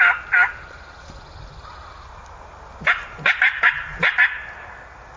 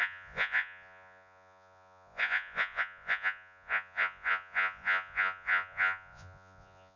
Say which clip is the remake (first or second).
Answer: second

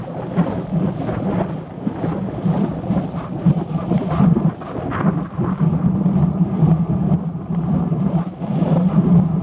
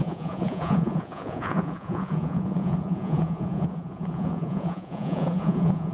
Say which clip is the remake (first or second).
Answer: second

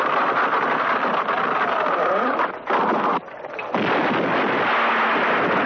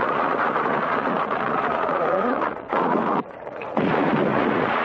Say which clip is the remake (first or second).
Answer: second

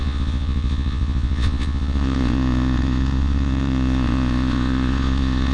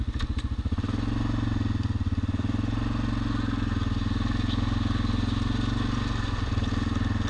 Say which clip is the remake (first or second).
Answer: first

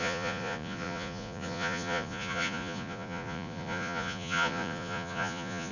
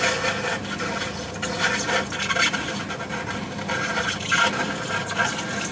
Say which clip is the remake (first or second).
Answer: first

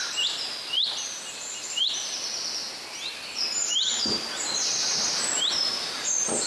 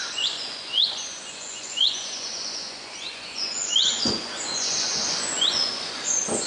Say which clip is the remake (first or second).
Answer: second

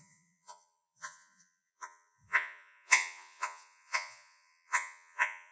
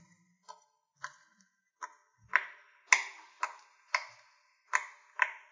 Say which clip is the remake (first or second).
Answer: first